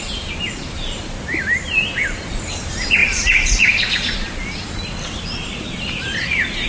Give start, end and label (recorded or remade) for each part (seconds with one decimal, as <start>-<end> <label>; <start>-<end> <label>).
0.0-6.7 recorded